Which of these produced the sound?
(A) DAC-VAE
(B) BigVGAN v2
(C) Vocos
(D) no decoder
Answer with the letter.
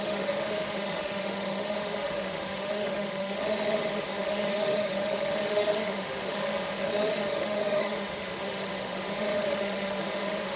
A